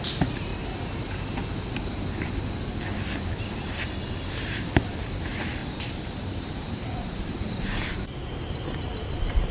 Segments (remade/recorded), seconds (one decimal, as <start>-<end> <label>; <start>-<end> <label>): 0.0-0.5 remade; 0.5-3.9 recorded; 3.9-9.5 remade